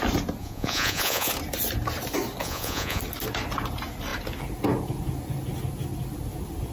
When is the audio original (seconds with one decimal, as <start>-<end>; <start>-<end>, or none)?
0.0-0.4; 1.3-2.4; 3.0-6.7